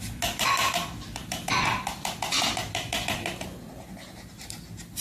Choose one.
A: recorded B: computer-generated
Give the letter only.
A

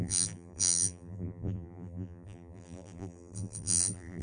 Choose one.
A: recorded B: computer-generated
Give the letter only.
B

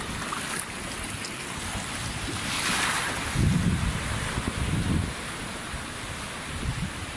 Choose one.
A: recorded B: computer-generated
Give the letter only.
A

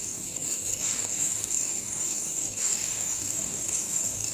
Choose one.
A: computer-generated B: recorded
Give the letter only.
A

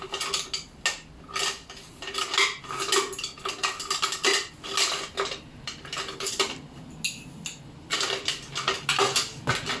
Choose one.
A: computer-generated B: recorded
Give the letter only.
B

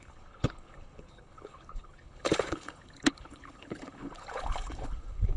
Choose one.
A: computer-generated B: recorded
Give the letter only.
A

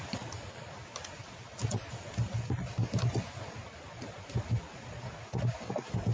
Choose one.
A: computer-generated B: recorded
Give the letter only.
B